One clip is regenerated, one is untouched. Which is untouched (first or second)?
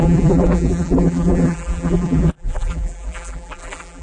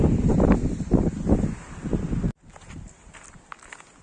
second